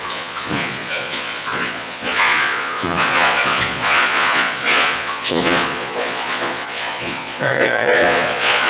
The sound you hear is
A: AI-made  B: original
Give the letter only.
A